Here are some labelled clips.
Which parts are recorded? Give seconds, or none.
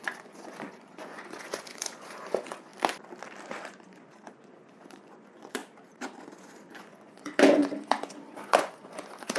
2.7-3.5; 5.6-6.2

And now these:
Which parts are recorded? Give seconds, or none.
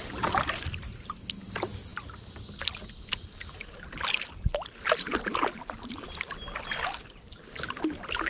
0.0-8.3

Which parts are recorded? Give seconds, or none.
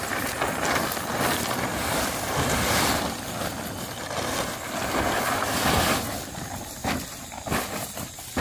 0.0-6.8; 7.4-8.4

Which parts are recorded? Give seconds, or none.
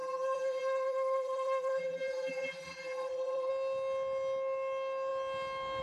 3.5-5.8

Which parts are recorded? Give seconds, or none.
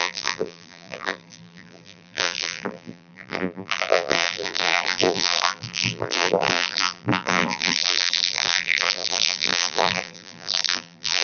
none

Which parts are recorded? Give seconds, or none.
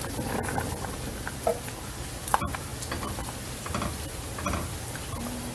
0.0-5.5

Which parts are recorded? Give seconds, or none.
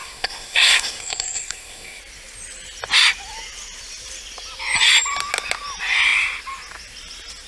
2.0-7.5